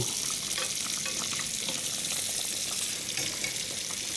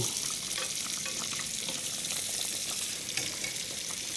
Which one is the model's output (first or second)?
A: second